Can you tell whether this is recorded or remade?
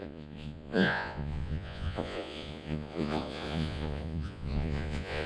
remade